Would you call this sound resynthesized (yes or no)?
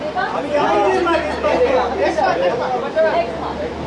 yes